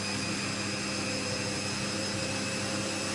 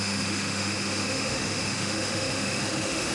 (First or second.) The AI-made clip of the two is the second